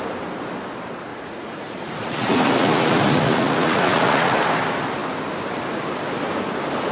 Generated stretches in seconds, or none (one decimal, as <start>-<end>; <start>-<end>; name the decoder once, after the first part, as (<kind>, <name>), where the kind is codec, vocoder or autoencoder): 1.1-4.4 (vocoder, Vocos)